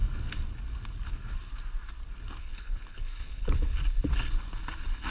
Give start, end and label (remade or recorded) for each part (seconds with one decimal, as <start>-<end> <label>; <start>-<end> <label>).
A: 0.0-2.4 recorded; 2.4-3.7 remade; 3.7-5.1 recorded